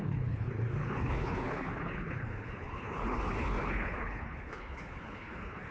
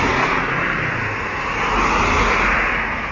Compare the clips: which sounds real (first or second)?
second